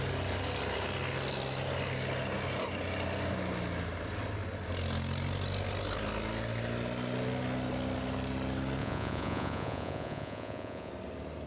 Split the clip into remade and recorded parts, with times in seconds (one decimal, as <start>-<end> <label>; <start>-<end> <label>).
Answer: 0.0-8.8 recorded; 8.8-10.9 remade; 10.9-11.5 recorded